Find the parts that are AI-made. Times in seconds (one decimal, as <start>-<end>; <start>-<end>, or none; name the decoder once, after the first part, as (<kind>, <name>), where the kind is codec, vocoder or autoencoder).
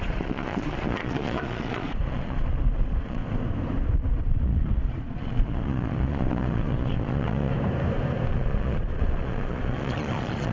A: 0.0-3.2 (vocoder, Vocos); 4.2-7.5; 8.3-10.5